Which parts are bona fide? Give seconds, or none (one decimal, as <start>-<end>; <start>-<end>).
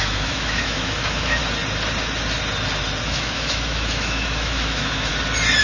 1.4-3.0; 5.1-5.6